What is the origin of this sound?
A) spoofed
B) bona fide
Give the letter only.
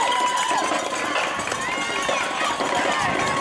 B